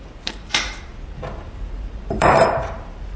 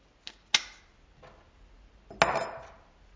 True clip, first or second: second